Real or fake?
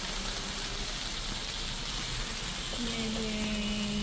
real